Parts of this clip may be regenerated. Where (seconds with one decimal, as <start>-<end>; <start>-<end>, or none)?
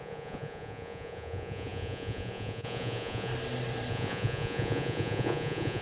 0.0-3.3; 3.9-5.8